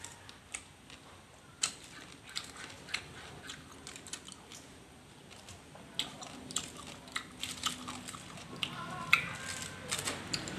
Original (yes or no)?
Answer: yes